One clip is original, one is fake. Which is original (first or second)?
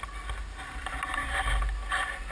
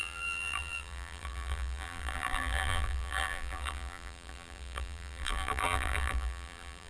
first